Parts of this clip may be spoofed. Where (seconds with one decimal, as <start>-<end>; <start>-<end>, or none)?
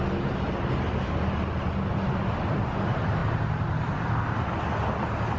none